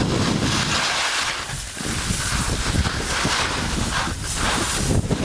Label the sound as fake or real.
real